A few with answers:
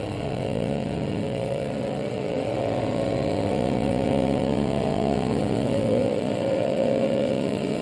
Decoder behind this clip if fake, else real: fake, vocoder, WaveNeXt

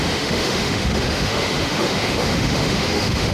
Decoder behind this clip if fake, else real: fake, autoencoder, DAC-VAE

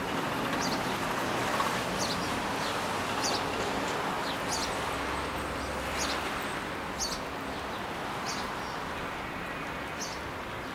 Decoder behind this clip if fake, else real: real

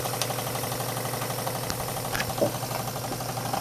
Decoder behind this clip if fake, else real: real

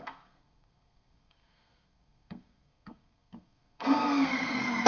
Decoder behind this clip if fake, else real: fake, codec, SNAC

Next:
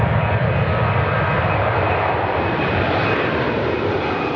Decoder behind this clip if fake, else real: fake, vocoder, BigVGAN v2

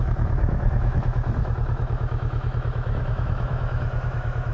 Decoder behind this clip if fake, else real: fake, autoencoder, DAC-VAE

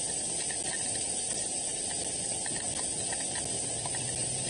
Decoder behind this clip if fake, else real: real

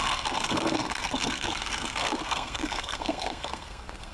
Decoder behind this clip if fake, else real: fake, codec, SNAC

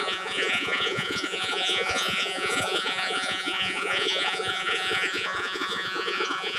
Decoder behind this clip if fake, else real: fake, vocoder, Vocos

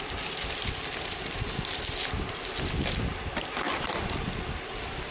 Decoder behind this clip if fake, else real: real